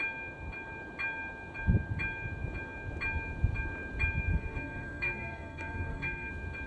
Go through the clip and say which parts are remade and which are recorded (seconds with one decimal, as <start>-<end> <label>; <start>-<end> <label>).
0.0-4.3 recorded; 4.3-6.3 remade; 6.3-6.7 recorded